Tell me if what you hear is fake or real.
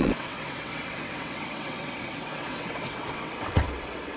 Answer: fake